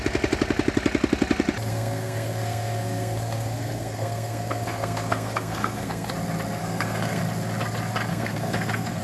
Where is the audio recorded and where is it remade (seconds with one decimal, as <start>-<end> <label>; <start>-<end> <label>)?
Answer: 0.0-1.7 recorded; 1.7-6.1 remade; 6.1-6.6 recorded; 6.6-7.2 remade; 7.2-8.1 recorded; 8.1-9.0 remade